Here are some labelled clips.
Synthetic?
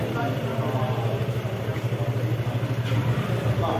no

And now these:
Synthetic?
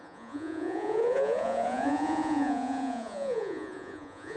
yes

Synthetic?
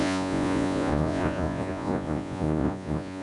yes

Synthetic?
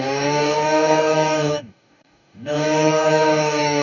yes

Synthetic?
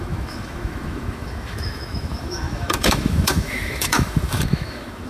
yes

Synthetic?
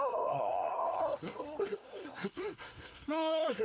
yes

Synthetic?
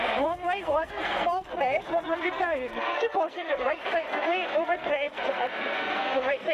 yes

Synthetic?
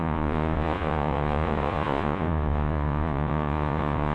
yes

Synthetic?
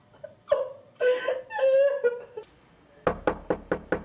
no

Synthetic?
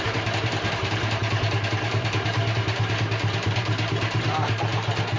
yes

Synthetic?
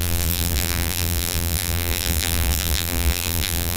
yes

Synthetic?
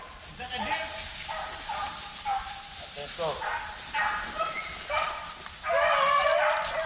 no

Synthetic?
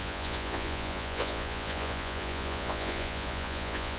yes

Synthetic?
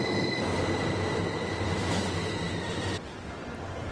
no